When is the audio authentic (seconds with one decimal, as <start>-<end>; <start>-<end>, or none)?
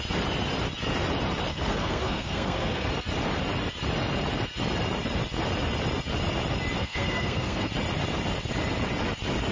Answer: 0.0-1.5; 2.9-6.8; 7.7-9.5